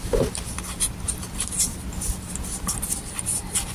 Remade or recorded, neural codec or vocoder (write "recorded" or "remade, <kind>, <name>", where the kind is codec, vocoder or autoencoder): recorded